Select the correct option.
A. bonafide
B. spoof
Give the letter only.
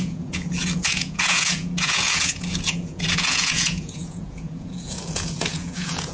B